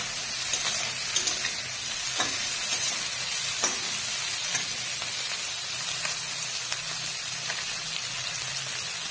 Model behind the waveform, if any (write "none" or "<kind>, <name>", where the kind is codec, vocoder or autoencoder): none